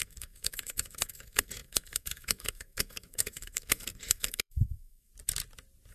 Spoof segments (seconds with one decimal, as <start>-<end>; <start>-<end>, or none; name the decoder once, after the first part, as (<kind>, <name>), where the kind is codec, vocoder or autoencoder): 0.0-5.1 (codec, SNAC)

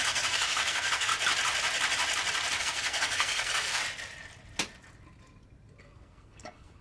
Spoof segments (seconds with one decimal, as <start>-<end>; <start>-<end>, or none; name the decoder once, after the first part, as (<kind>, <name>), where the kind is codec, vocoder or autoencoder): 0.0-1.1 (codec, SNAC); 2.6-3.8; 5.8-6.8

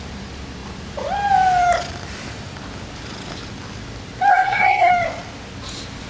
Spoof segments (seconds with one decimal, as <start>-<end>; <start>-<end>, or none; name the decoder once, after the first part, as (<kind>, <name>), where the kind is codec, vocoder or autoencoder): 4.3-4.9 (codec, SNAC)

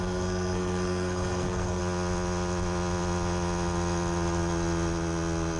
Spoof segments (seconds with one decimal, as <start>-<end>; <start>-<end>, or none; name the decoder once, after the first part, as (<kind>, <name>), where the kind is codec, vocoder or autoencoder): 0.0-1.8 (codec, SNAC)

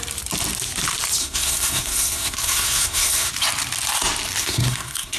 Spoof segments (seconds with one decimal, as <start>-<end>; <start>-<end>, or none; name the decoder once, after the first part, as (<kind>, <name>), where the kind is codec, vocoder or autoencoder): 1.2-3.3 (codec, SNAC); 4.4-5.2

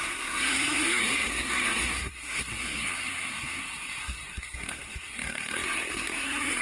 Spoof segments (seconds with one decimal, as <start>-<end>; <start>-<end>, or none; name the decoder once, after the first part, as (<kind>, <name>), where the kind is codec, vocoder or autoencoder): 0.0-6.6 (codec, SNAC)

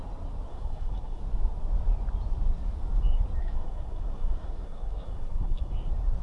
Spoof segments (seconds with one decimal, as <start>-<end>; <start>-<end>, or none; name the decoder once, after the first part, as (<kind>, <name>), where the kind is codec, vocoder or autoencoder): 0.5-1.2 (codec, SNAC); 3.4-5.7